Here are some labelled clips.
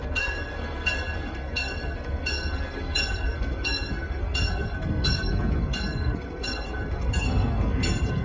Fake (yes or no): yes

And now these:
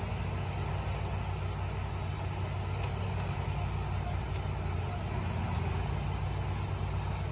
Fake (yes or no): no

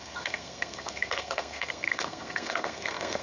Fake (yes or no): yes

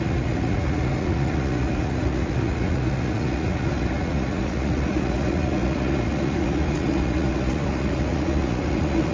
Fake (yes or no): yes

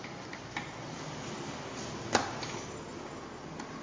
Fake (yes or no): no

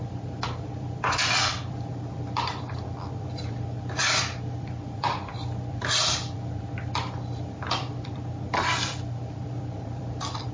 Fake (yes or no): yes